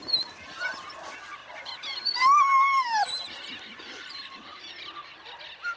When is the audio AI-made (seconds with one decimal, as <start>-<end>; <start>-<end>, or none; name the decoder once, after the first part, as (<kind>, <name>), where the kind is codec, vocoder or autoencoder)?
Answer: 1.4-4.7 (vocoder, BigVGAN v2)